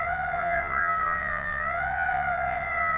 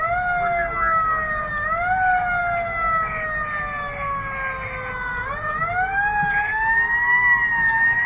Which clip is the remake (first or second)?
first